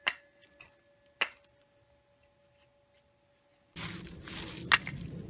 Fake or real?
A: real